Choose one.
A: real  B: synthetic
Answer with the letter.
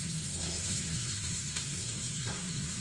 B